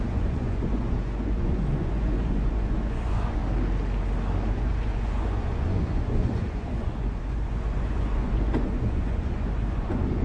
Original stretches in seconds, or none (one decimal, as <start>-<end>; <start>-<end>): 3.4-4.5